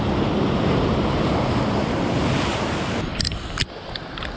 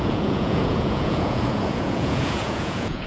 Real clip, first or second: first